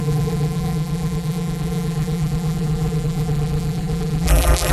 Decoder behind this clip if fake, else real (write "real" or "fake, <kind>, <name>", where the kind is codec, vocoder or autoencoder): fake, vocoder, BigVGAN v2